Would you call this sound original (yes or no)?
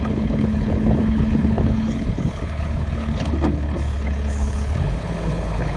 no